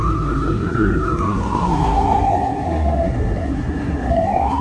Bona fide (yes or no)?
no